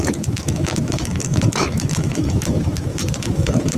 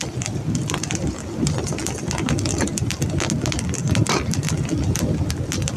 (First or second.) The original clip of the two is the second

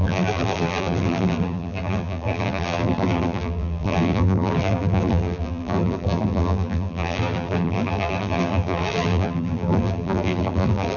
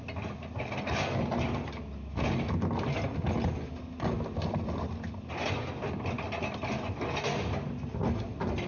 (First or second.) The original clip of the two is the second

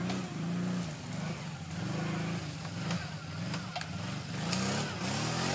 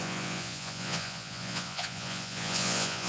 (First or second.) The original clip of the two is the first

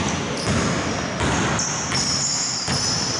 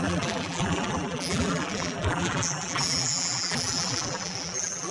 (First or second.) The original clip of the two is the first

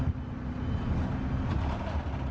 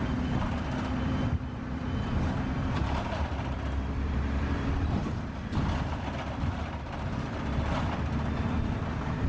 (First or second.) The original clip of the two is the first